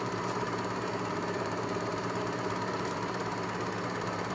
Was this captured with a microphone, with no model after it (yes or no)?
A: no